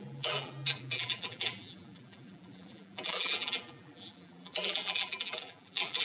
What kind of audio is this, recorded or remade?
remade